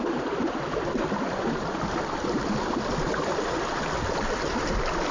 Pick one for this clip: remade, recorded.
recorded